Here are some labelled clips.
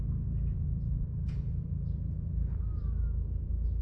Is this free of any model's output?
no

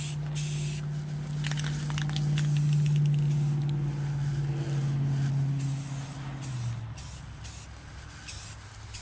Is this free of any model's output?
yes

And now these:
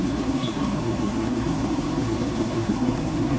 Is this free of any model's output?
no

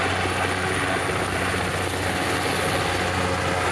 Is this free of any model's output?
yes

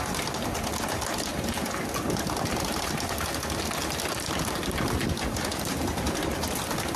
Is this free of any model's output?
yes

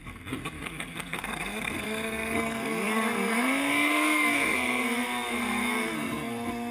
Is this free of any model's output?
no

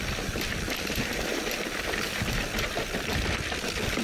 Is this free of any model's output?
no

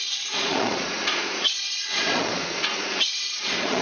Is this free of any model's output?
no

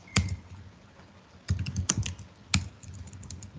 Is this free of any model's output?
yes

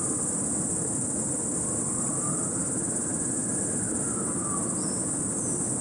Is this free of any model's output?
yes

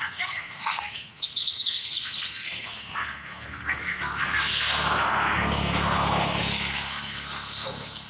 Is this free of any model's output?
no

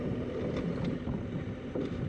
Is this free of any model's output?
yes